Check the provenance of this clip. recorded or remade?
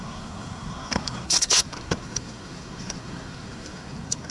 remade